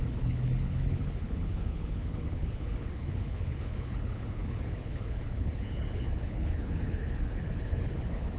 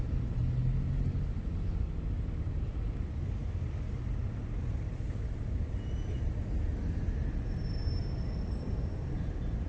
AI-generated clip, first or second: first